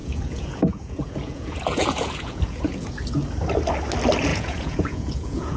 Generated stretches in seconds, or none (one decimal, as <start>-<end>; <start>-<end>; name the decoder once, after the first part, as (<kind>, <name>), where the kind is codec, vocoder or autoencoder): 0.0-2.9 (vocoder, Vocos); 4.3-5.6